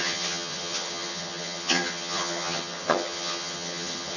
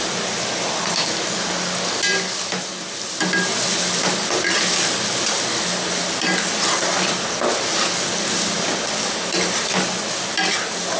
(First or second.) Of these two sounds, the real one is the second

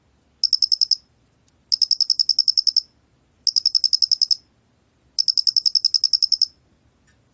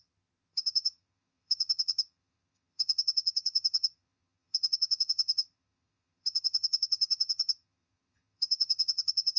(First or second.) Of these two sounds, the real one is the first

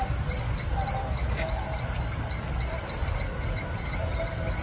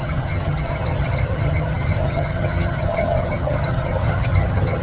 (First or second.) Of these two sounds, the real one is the first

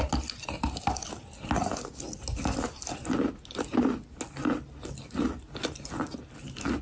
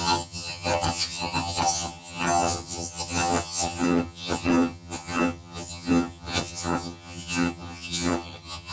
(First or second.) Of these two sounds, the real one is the first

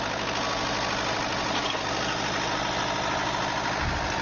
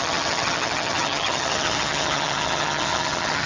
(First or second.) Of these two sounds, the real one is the first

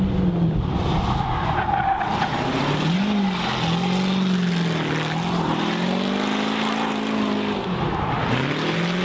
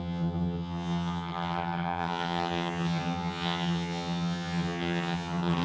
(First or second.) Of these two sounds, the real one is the first